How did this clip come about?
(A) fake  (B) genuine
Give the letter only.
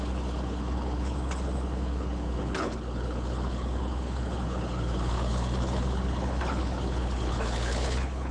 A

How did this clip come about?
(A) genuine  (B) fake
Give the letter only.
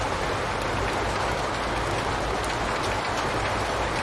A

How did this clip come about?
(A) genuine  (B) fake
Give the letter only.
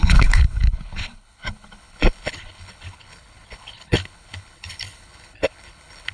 B